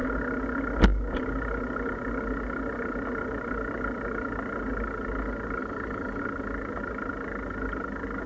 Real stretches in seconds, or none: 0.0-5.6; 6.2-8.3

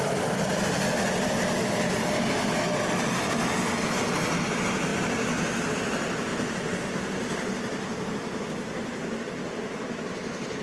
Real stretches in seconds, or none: 0.0-6.3; 6.9-10.6

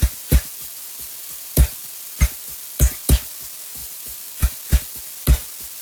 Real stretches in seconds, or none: 0.0-0.5; 3.3-3.8; 5.0-5.8

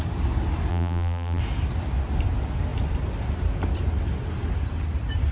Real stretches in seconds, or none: 0.0-0.7; 1.4-5.3